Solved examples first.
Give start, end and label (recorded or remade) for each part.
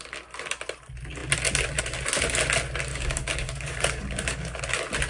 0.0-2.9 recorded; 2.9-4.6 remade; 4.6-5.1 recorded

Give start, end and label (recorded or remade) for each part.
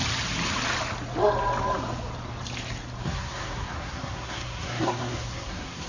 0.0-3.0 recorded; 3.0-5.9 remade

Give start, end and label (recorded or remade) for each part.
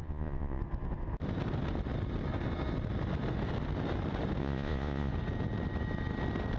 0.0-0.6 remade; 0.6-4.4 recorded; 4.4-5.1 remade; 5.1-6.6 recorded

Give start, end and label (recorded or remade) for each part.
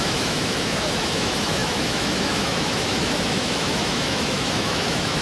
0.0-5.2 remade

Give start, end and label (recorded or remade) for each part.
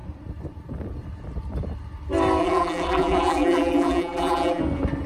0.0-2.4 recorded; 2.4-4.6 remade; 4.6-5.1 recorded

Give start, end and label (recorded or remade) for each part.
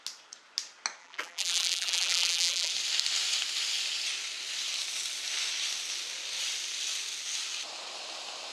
0.0-1.0 recorded; 1.0-2.7 remade; 2.7-8.5 recorded